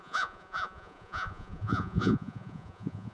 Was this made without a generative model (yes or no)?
no